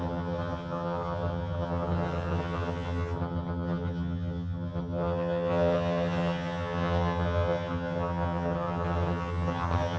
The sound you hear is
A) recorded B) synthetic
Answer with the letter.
B